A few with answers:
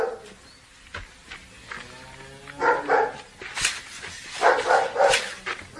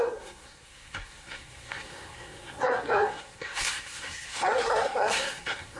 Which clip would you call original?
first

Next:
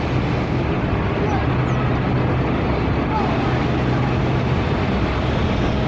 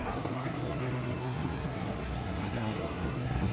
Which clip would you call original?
first